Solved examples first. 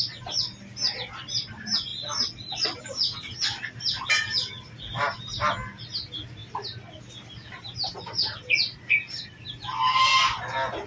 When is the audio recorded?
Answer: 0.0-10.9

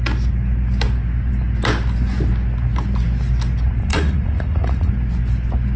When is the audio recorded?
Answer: 0.0-3.8; 4.9-5.8

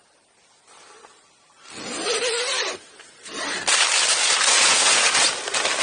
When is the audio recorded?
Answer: 0.0-4.5; 5.2-5.8

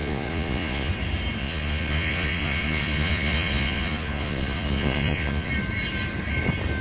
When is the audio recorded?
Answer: 0.9-1.4; 5.5-6.8

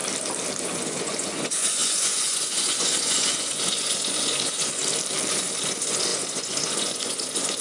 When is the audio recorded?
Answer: 0.0-0.6; 4.8-5.3

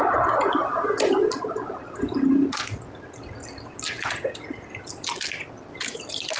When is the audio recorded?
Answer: 0.0-6.4

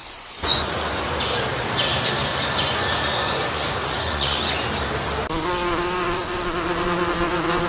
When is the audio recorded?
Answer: 1.2-2.3; 4.7-6.0; 7.1-7.7